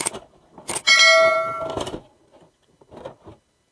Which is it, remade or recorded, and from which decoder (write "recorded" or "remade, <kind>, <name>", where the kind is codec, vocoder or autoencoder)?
recorded